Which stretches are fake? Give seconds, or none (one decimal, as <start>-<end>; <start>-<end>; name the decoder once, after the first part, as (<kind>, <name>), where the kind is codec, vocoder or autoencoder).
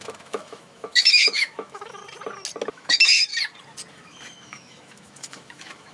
0.0-2.0 (autoencoder, DAC-VAE); 2.7-3.3; 3.9-5.9